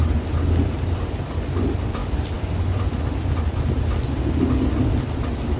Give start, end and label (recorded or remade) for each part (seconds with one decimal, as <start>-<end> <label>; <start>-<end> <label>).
0.0-5.6 recorded